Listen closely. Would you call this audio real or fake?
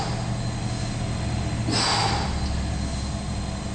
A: real